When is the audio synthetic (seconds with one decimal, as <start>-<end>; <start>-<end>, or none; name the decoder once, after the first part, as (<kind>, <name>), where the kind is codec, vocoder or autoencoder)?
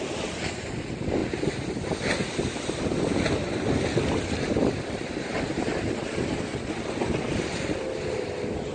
none